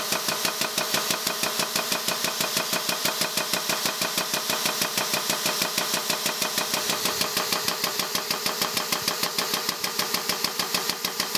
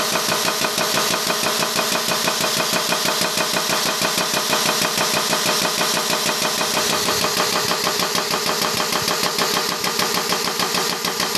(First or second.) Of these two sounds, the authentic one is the second